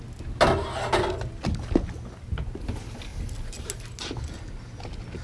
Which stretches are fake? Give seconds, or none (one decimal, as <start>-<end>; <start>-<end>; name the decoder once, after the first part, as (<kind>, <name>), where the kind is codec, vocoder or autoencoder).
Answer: none